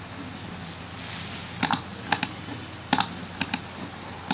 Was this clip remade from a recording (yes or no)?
no